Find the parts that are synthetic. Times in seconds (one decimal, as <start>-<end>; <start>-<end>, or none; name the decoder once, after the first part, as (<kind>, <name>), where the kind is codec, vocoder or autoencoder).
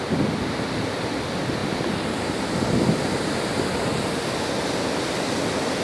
none